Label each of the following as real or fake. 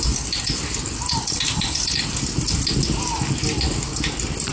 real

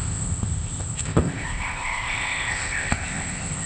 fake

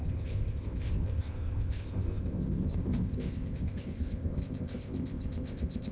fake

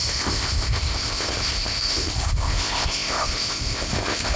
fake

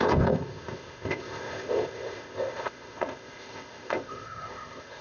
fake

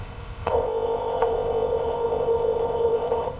fake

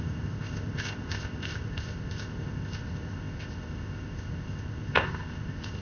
fake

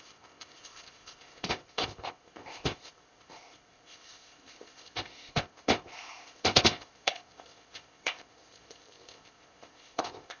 fake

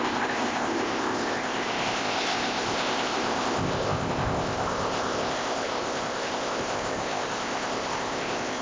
fake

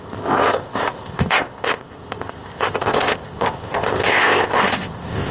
fake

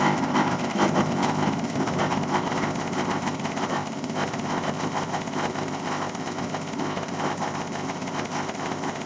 fake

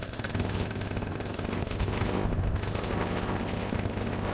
fake